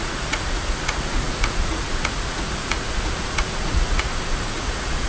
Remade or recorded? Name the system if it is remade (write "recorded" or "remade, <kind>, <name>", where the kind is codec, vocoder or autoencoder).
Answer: remade, vocoder, Vocos